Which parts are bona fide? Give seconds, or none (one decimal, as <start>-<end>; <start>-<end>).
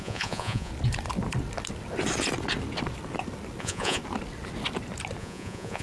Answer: 0.7-3.6; 4.0-5.2